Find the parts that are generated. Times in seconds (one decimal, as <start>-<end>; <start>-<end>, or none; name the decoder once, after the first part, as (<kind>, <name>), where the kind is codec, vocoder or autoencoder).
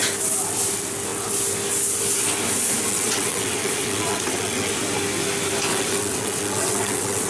2.9-4.7 (vocoder, WaveNeXt); 5.7-7.3